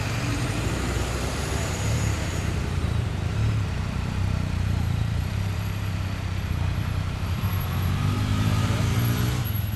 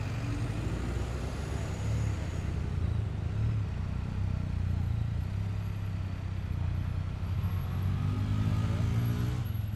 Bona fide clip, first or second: second